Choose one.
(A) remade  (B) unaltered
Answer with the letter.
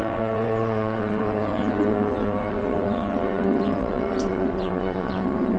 A